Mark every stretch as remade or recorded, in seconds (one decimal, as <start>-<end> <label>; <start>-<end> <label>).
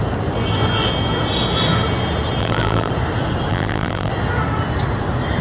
0.0-2.4 recorded; 2.4-2.9 remade; 2.9-3.5 recorded; 3.5-4.1 remade; 4.1-5.4 recorded